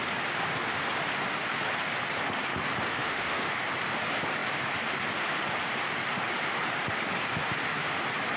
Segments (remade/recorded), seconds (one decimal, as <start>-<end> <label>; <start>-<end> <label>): 0.0-2.9 recorded; 2.9-3.5 remade; 3.5-8.4 recorded